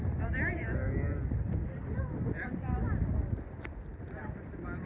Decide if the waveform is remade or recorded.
recorded